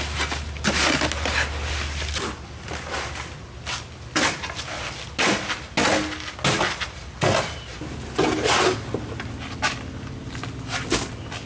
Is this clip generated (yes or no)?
no